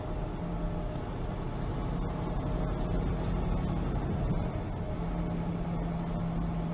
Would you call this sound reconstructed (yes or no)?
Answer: no